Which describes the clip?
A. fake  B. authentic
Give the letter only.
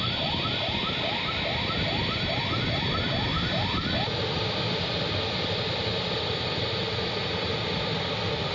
B